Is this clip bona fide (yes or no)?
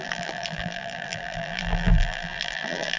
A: no